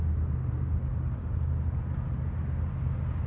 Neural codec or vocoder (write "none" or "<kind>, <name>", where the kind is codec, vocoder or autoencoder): none